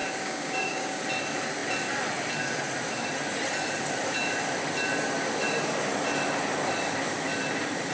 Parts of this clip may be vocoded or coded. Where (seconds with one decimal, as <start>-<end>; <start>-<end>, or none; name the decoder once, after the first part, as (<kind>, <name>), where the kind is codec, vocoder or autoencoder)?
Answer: 0.0-1.0 (codec, DAC)